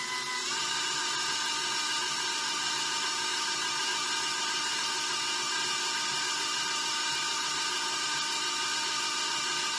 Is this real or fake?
real